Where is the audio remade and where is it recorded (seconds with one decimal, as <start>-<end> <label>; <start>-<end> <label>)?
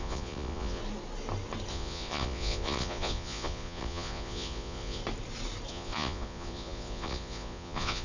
0.0-0.8 remade; 0.8-1.7 recorded; 1.7-5.0 remade; 5.0-5.7 recorded; 5.7-8.0 remade